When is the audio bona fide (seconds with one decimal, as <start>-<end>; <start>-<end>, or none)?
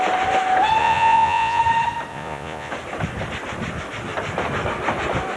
0.0-0.8; 1.6-2.1; 2.7-5.4